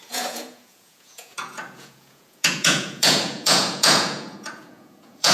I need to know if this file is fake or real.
fake